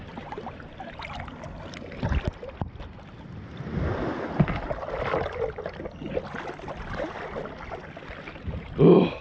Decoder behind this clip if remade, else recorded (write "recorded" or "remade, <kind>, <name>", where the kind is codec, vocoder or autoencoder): recorded